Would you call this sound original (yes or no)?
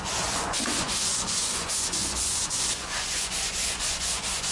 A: no